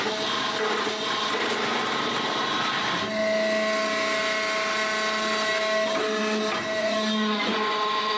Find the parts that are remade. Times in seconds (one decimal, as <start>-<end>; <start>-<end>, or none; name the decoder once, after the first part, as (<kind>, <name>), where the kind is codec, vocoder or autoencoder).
6.8-8.2 (vocoder, Vocos)